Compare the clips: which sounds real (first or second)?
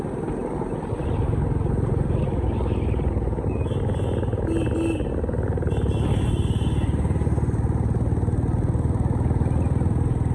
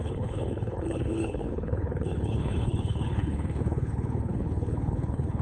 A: first